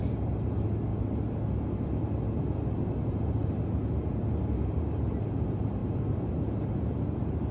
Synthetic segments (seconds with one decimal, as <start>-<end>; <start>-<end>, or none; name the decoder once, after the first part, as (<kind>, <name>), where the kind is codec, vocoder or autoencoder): none